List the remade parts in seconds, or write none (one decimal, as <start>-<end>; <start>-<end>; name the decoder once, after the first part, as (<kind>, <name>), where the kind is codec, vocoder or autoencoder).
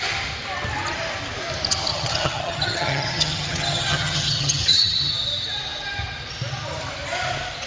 1.9-5.1 (vocoder, HiFi-GAN)